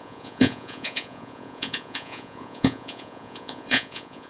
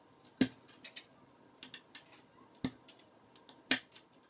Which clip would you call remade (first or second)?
first